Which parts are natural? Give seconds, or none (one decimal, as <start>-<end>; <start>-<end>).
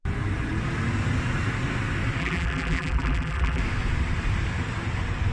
0.0-2.2; 3.6-5.3